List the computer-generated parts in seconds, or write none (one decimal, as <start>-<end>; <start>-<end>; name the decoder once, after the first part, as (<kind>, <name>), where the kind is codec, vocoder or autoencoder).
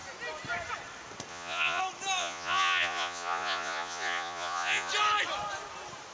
1.3-1.8 (vocoder, Vocos); 2.2-4.9